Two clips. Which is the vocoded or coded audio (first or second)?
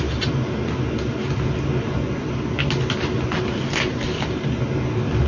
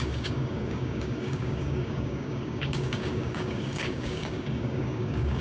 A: second